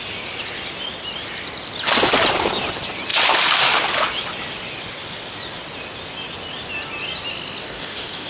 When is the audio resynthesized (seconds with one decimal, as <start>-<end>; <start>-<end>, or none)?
7.6-8.3